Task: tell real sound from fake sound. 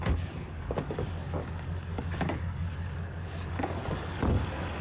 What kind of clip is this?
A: fake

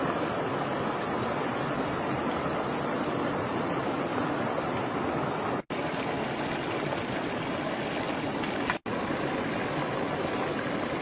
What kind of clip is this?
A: real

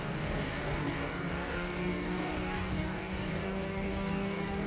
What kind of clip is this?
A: fake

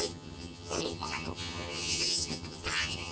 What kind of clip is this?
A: fake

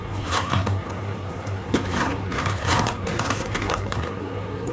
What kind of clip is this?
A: fake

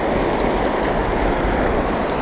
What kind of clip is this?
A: real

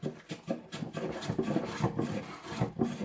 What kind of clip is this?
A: real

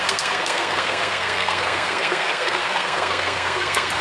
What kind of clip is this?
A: fake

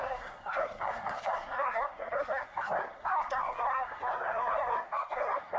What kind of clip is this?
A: fake